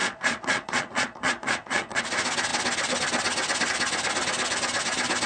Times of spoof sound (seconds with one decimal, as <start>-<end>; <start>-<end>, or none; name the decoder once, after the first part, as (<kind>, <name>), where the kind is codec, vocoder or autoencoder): 0.0-2.0 (vocoder, Vocos)